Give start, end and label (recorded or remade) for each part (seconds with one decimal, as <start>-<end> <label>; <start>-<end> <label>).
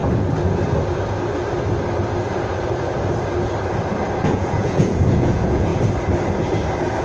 0.0-4.2 recorded; 4.2-5.7 remade; 5.7-7.0 recorded